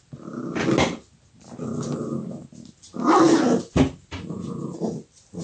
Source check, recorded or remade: recorded